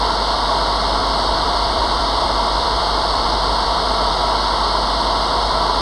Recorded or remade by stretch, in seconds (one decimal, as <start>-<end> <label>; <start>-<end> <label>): 0.0-1.0 recorded; 1.0-4.1 remade; 4.1-5.8 recorded